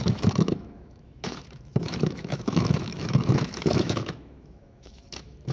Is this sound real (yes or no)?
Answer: no